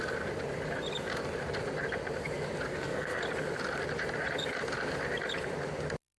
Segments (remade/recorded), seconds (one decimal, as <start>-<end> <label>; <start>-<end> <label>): 0.0-2.7 recorded; 2.7-3.2 remade; 3.2-6.2 recorded